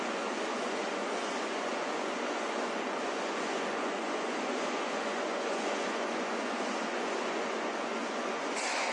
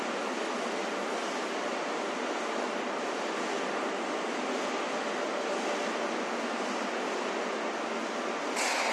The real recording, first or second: second